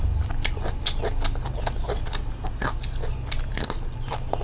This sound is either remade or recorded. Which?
recorded